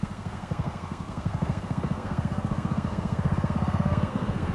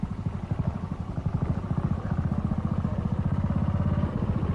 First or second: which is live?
second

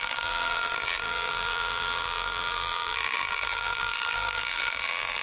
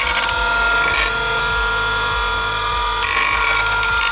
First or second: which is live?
second